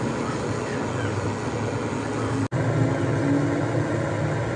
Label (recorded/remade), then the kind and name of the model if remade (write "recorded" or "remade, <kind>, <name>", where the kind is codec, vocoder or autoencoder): recorded